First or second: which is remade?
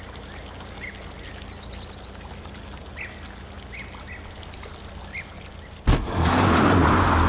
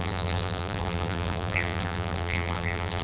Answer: second